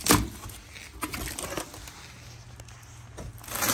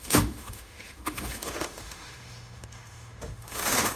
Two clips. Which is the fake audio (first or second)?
second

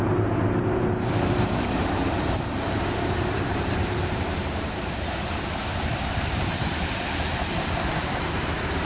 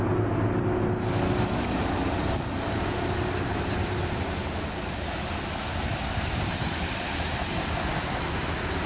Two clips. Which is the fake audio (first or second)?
first